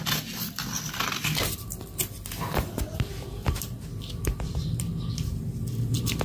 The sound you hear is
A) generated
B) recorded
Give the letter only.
A